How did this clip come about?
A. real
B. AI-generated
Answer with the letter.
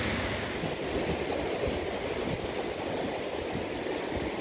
A